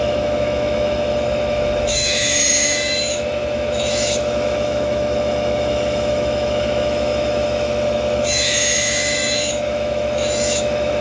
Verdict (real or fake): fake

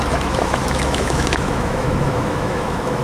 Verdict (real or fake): fake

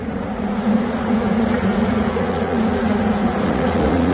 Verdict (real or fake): fake